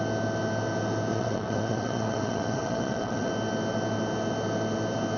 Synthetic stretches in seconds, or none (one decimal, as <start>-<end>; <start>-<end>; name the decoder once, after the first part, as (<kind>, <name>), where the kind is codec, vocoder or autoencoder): 1.1-3.3 (vocoder, WaveNeXt)